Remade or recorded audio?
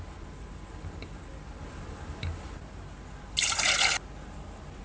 recorded